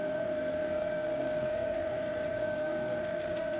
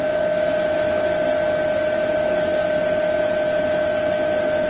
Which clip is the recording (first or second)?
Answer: second